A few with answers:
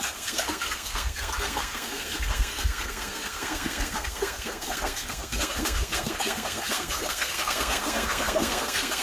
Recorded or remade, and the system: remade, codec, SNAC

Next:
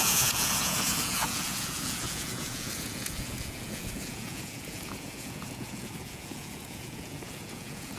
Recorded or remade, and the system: remade, vocoder, Vocos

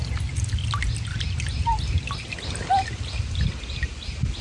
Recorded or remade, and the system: recorded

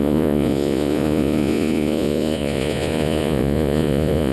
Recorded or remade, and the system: remade, vocoder, Vocos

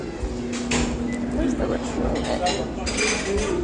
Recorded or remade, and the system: recorded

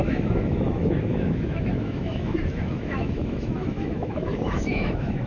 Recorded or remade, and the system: remade, autoencoder, DAC-VAE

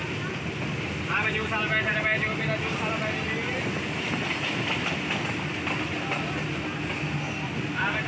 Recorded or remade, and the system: recorded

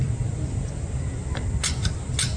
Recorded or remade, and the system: recorded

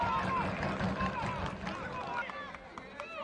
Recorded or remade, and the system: recorded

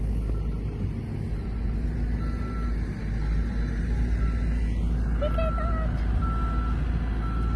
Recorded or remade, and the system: recorded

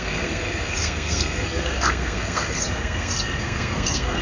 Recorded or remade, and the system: remade, codec, SNAC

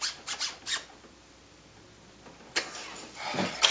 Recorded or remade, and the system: recorded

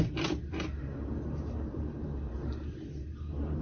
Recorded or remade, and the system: remade, vocoder, BigVGAN v2